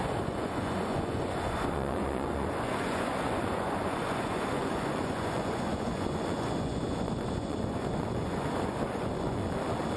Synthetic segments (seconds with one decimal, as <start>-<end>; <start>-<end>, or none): 0.0-9.4

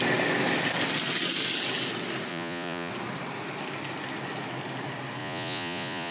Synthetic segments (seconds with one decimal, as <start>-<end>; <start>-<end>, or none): 2.3-2.9; 5.2-6.1